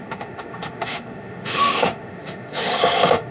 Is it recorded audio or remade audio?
remade